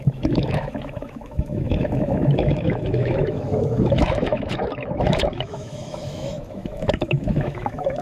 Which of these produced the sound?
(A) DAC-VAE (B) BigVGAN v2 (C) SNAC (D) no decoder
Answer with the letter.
A